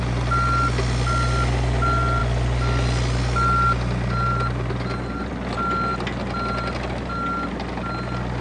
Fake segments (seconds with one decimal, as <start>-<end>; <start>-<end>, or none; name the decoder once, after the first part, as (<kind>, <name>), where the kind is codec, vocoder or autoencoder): none